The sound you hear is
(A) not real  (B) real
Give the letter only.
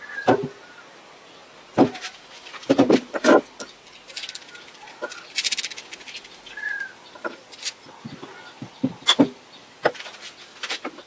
B